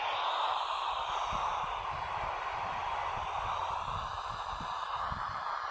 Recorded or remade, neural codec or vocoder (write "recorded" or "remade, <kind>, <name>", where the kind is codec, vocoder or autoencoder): recorded